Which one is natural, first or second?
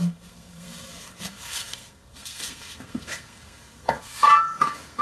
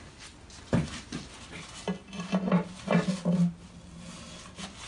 second